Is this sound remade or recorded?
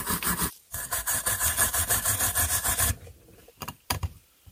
remade